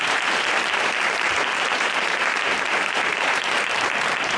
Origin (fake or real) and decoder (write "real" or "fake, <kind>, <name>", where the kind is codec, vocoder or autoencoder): fake, vocoder, BigVGAN v2